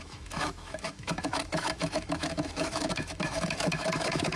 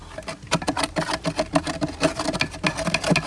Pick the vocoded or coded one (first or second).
first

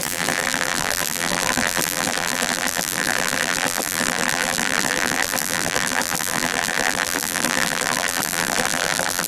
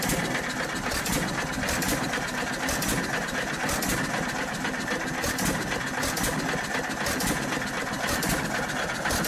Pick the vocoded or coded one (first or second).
first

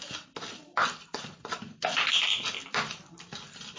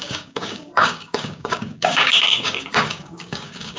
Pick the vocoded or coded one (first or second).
second